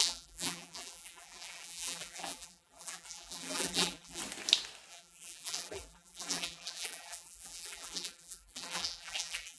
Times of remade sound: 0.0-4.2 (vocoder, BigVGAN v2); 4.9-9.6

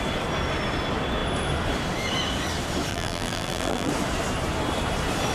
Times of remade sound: 2.9-3.9 (vocoder, BigVGAN v2)

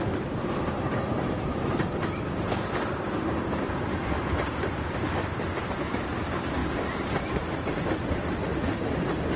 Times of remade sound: 0.0-6.6 (vocoder, BigVGAN v2); 7.2-8.5

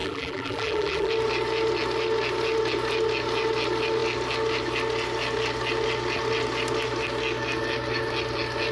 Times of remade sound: 0.0-1.1 (vocoder, BigVGAN v2)